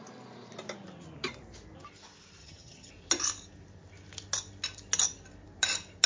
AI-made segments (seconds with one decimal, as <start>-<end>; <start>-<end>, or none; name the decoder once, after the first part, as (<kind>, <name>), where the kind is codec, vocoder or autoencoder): 2.4-2.9 (vocoder, HiFi-GAN)